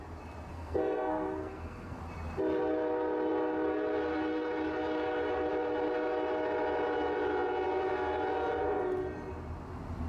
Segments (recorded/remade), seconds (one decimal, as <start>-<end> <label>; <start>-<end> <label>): 0.0-0.5 recorded; 0.5-2.0 remade; 2.0-10.1 recorded